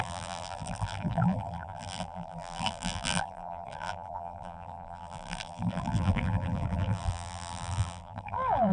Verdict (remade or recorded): remade